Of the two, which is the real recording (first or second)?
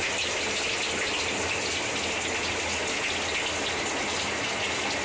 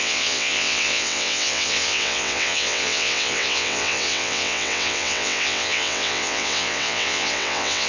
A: first